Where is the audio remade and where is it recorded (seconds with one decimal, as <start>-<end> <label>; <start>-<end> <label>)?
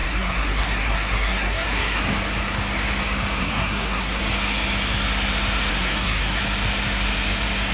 0.0-2.0 remade; 2.0-3.4 recorded; 3.4-4.2 remade; 4.2-5.7 recorded; 5.7-6.4 remade; 6.4-7.7 recorded